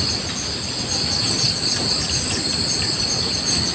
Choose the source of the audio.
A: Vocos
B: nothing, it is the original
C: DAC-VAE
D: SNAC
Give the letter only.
B